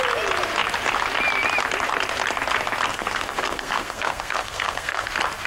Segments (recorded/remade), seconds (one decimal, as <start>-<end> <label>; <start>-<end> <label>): 0.0-2.9 recorded; 2.9-5.1 remade; 5.1-5.5 recorded